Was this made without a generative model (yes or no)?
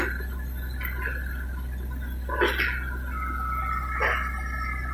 yes